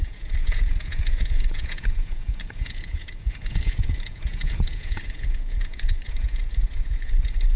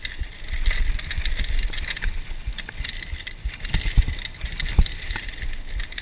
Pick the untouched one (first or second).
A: second